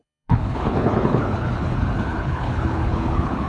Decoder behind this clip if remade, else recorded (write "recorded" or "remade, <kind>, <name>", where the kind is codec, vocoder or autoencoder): remade, codec, HILCodec